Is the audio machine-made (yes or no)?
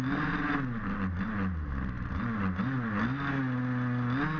no